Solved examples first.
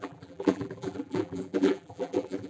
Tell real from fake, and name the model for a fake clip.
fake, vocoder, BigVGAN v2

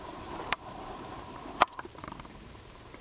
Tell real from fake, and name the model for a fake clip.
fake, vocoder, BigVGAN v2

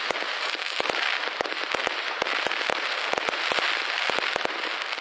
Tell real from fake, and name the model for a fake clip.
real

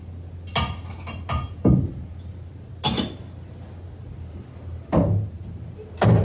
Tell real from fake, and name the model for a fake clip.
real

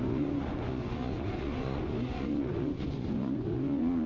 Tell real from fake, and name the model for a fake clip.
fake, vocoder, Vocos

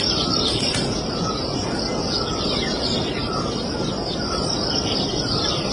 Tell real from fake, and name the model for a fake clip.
real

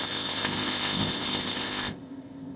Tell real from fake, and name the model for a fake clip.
fake, codec, ZipCodec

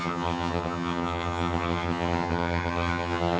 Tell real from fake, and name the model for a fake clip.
fake, vocoder, HiFi-GAN